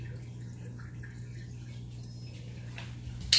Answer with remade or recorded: recorded